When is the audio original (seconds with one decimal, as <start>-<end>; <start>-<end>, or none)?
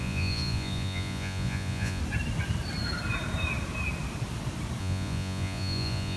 2.0-4.8